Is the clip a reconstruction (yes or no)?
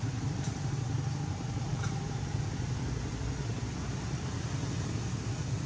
no